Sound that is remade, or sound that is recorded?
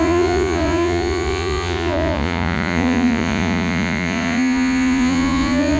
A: remade